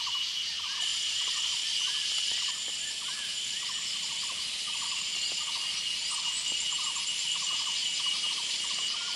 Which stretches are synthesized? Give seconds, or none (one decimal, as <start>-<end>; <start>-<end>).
0.0-0.9; 2.6-5.1; 6.2-9.2